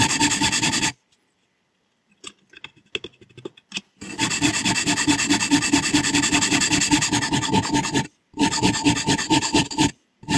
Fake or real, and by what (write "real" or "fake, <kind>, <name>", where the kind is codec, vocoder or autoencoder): real